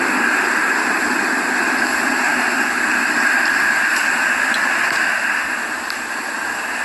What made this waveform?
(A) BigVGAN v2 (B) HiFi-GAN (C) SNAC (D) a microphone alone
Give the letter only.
D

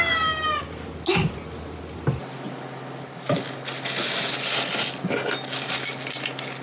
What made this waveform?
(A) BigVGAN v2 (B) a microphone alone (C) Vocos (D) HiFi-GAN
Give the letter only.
B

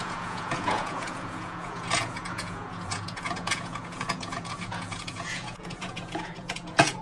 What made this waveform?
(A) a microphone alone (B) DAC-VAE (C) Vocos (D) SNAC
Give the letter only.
C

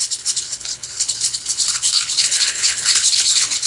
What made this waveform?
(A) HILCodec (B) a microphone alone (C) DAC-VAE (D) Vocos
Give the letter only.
A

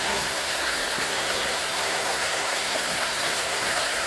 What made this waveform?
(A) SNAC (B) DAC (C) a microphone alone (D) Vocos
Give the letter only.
A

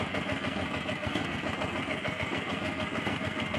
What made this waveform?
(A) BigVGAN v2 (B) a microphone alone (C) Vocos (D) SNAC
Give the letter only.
D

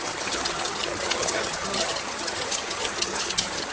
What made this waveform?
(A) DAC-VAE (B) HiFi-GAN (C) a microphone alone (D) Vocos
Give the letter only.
B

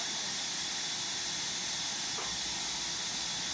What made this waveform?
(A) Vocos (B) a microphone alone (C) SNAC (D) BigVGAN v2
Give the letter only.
B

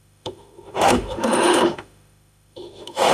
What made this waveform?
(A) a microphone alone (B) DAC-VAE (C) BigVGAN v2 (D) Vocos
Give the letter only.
B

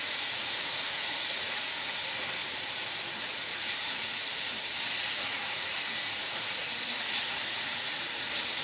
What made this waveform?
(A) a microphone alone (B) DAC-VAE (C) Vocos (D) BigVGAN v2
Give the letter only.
C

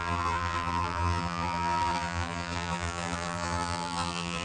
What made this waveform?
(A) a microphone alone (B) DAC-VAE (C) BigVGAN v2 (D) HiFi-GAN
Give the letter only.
C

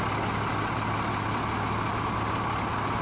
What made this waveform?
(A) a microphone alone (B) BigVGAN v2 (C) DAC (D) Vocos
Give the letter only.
A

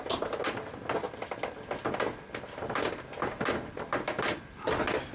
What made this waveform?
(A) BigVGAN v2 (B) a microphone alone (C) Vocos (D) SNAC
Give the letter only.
B